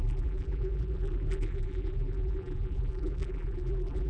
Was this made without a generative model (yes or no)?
no